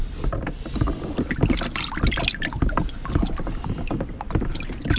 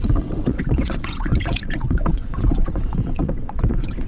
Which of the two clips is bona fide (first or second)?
first